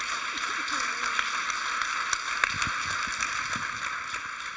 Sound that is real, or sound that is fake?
real